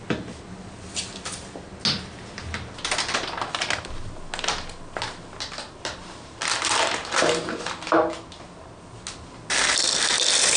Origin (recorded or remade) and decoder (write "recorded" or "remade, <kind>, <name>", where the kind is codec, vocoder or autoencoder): recorded